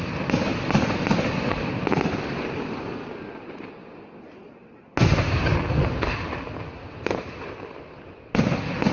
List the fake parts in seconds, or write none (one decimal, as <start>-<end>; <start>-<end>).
none